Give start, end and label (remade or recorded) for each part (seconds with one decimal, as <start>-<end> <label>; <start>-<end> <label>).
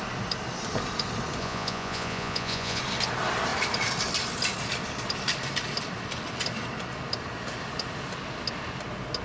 0.0-1.4 recorded; 1.4-2.8 remade; 2.8-9.2 recorded